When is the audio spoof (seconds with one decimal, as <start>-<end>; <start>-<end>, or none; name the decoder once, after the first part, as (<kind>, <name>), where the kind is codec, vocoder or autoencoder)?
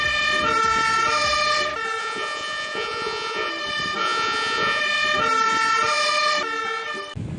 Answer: 2.0-3.5 (vocoder, Vocos); 4.0-4.8